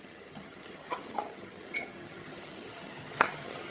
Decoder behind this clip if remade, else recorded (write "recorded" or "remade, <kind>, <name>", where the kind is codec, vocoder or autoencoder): remade, vocoder, HiFi-GAN